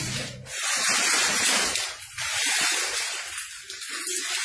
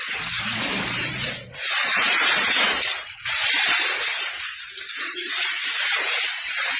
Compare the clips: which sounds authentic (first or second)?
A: first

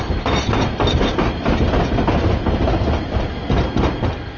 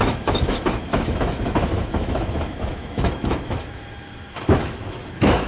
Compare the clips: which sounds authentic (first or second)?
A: first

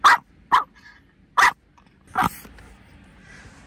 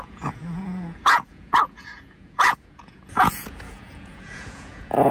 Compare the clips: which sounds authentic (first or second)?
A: first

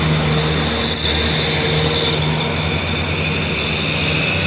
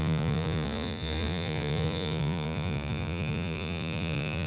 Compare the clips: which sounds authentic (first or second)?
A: first